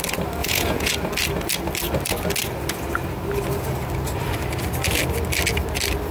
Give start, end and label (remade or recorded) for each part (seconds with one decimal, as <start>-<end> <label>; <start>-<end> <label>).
0.0-0.4 recorded; 0.4-0.9 remade; 0.9-6.1 recorded